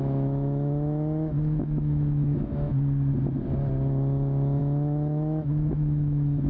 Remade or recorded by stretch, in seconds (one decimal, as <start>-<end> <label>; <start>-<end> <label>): 0.0-2.7 remade; 2.7-4.6 recorded; 4.6-6.5 remade